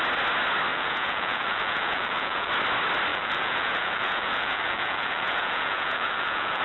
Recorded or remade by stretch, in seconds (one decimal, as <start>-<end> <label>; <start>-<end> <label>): 0.0-0.7 recorded; 0.7-2.5 remade; 2.5-3.1 recorded; 3.1-6.6 remade